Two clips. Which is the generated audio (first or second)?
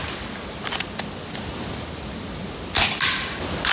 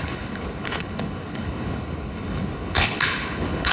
second